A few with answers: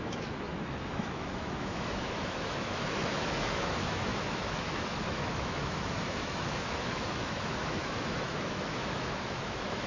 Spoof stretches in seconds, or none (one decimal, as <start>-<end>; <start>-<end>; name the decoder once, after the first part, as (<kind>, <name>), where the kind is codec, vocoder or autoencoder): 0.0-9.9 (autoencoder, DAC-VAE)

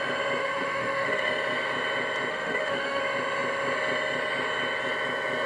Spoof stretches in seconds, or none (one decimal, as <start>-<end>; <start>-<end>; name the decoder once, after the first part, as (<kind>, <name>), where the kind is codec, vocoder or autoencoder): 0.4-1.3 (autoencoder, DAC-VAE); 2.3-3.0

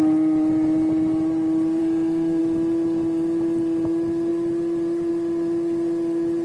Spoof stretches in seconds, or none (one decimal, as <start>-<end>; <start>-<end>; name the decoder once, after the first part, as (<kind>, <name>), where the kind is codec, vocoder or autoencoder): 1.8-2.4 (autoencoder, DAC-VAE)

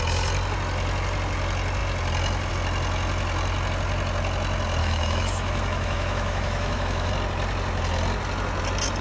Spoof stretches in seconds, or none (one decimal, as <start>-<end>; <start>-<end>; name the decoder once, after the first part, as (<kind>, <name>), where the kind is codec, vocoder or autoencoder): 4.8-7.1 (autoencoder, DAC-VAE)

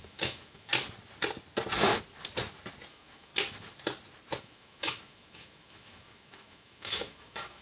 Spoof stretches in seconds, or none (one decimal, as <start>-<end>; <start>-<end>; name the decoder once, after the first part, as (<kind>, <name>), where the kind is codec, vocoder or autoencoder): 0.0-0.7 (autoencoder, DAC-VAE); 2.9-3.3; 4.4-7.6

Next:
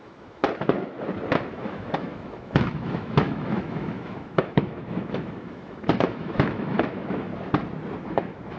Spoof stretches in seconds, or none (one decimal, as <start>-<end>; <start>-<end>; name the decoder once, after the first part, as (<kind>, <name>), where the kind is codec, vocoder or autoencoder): 0.0-0.4 (autoencoder, DAC-VAE); 1.5-7.3; 8.0-8.6